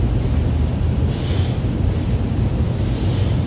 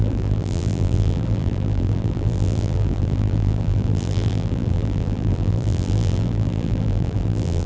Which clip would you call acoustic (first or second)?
first